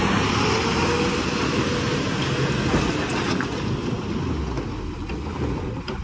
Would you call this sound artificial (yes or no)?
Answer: no